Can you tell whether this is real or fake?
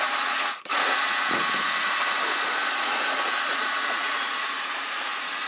fake